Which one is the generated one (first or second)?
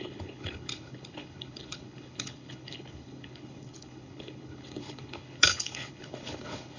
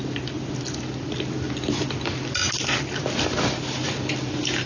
first